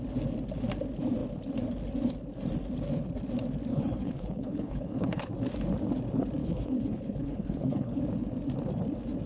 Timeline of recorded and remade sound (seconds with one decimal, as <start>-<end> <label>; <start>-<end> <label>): 0.0-3.7 recorded; 3.7-5.3 remade; 5.3-6.4 recorded; 6.4-8.0 remade; 8.0-9.3 recorded